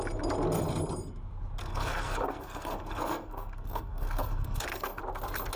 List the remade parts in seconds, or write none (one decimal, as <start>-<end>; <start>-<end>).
1.6-5.0